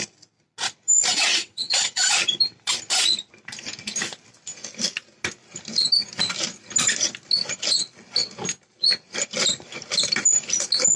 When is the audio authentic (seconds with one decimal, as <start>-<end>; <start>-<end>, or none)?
0.0-1.1; 2.1-11.0